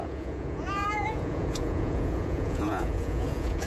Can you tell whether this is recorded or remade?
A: remade